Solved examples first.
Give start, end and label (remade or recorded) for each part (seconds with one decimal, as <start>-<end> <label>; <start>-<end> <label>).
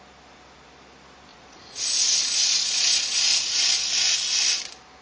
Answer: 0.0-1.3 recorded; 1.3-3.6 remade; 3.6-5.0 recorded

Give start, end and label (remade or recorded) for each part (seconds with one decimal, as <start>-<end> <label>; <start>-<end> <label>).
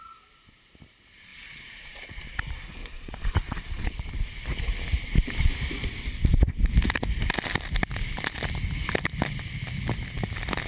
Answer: 0.0-1.3 recorded; 1.3-2.2 remade; 2.2-2.8 recorded; 2.8-4.1 remade; 4.1-10.7 recorded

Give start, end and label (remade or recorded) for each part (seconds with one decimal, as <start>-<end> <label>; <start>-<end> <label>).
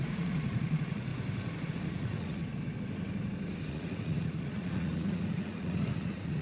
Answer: 0.0-1.1 remade; 1.1-1.7 recorded; 1.7-2.4 remade; 2.4-3.7 recorded; 3.7-6.4 remade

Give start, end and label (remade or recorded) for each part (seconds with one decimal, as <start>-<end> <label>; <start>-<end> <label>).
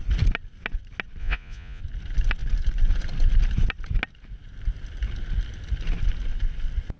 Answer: 0.0-1.2 recorded; 1.2-1.8 remade; 1.8-7.0 recorded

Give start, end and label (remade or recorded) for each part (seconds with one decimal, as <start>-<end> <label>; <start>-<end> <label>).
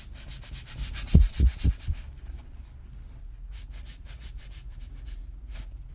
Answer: 0.0-0.8 recorded; 0.8-1.7 remade; 1.7-3.2 recorded; 3.2-5.9 remade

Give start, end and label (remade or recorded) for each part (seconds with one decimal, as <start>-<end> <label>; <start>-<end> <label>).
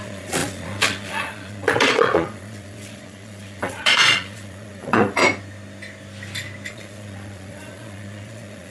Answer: 0.0-5.2 remade; 5.2-6.7 recorded; 6.7-8.7 remade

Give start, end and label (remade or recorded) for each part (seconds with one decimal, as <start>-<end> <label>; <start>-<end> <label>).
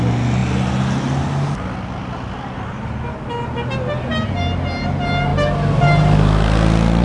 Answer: 0.0-7.0 recorded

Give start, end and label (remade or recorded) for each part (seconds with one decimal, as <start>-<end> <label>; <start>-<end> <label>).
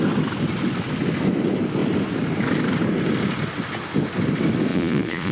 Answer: 0.0-4.7 recorded; 4.7-5.3 remade